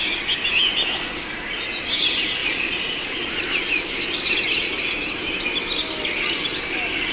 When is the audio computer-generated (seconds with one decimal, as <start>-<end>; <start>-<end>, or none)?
2.4-3.9